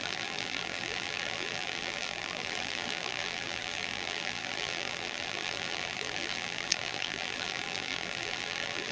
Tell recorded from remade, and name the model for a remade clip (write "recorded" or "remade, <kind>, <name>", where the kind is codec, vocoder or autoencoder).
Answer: remade, vocoder, BigVGAN v2